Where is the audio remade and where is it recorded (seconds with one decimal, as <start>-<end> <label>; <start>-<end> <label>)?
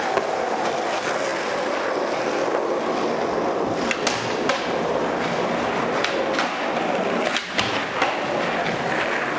0.0-9.4 recorded